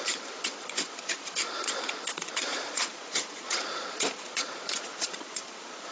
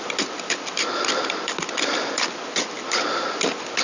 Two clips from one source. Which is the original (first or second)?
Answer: second